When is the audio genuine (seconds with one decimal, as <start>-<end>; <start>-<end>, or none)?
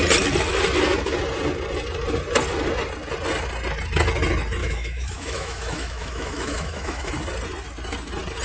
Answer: 0.0-4.6; 7.1-8.4